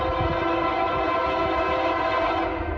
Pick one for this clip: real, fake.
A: real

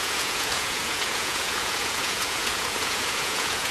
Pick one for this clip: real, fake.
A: fake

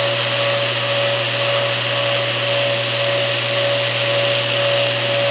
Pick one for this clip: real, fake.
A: real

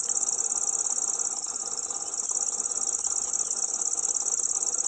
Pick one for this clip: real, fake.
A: real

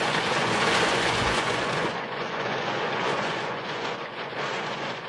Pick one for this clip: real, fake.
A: fake